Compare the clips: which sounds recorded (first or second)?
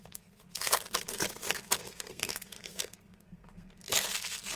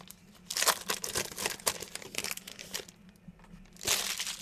second